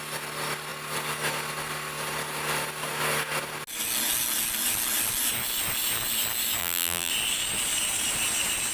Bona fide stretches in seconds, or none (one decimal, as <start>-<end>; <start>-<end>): 0.0-6.6; 7.1-8.7